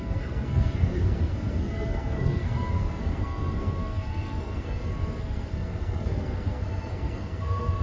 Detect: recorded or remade remade